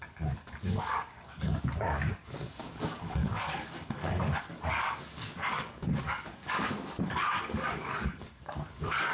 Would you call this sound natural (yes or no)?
no